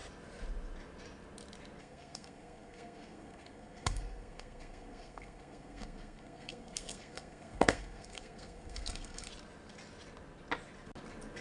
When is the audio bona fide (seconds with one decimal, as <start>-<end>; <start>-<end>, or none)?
0.0-1.8; 9.3-11.4